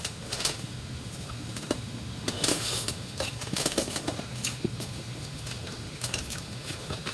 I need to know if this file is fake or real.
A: fake